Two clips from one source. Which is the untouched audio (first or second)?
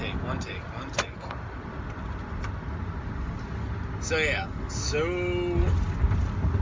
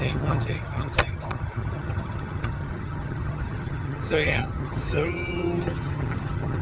first